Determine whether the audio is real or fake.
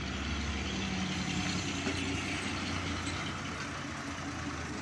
real